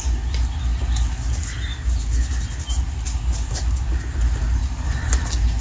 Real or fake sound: real